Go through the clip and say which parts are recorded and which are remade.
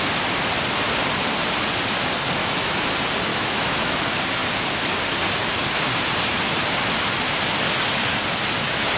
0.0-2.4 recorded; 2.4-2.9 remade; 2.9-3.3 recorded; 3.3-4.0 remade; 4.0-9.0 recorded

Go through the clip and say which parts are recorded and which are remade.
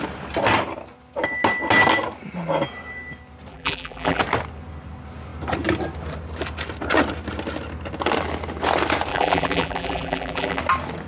0.0-3.5 recorded; 3.5-4.2 remade; 4.2-9.1 recorded; 9.1-10.6 remade; 10.6-11.1 recorded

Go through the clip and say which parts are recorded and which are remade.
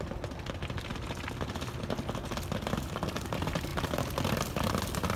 0.0-5.2 recorded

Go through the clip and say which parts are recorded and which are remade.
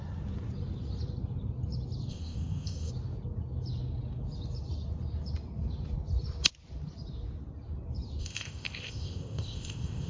0.0-2.1 recorded; 2.1-2.9 remade; 2.9-8.2 recorded; 8.2-10.1 remade